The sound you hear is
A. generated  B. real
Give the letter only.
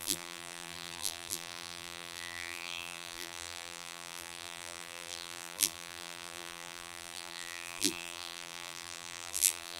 A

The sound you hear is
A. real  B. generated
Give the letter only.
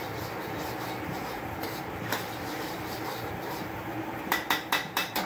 B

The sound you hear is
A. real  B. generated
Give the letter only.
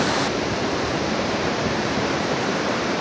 B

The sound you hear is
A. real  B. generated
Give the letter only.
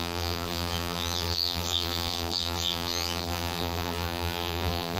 B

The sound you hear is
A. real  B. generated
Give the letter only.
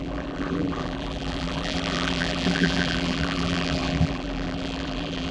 B